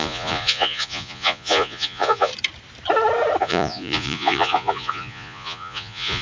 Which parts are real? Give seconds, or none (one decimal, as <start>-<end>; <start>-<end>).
2.3-3.4